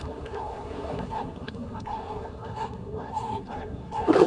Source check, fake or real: fake